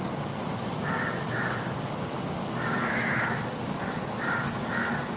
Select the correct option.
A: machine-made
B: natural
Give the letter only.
B